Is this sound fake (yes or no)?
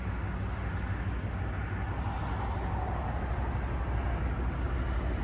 no